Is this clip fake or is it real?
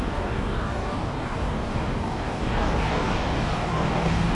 fake